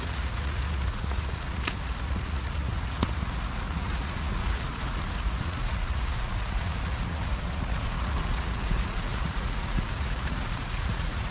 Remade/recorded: remade